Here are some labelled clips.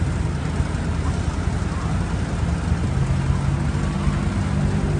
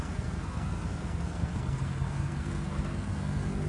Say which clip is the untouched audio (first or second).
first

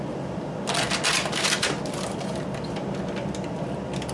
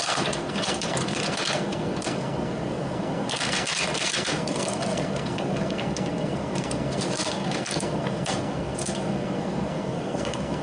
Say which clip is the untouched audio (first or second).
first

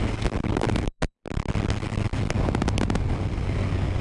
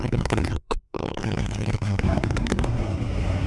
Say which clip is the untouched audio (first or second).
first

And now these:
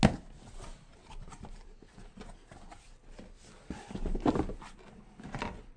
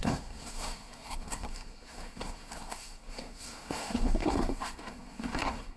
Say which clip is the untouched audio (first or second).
first